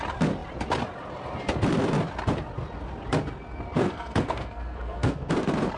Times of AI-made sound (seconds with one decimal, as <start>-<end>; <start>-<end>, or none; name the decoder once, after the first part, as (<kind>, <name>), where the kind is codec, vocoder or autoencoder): 3.8-5.3 (codec, SNAC)